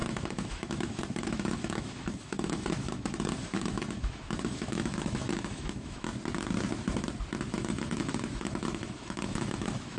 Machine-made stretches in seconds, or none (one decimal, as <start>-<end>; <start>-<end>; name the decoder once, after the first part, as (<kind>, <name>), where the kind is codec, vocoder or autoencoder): 0.0-6.1 (autoencoder, DAC-VAE); 7.5-10.0